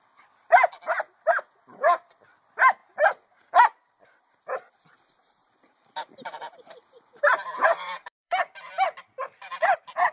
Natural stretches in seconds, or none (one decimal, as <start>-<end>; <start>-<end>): 0.0-5.4; 9.0-10.1